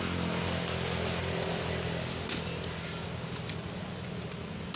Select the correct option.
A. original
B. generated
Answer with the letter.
A